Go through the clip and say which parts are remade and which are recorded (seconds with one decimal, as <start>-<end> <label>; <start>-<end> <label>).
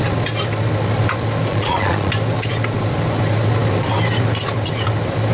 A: 0.0-1.5 recorded; 1.5-2.1 remade; 2.1-5.3 recorded